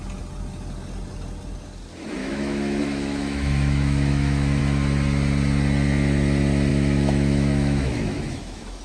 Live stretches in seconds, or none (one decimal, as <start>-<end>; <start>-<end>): 0.0-2.2; 4.6-6.7